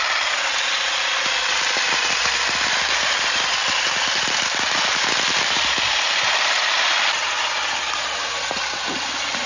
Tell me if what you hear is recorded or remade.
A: recorded